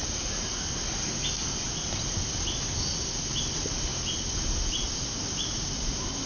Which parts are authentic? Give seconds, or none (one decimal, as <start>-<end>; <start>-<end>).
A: 0.0-6.3